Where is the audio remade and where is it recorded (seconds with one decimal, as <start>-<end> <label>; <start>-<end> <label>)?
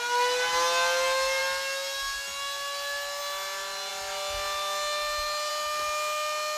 0.0-6.6 recorded